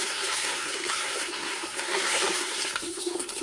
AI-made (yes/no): yes